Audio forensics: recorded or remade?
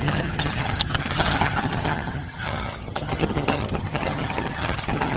remade